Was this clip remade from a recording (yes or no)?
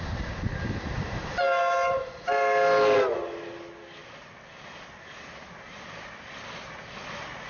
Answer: no